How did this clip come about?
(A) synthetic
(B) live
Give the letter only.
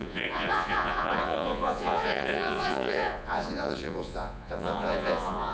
A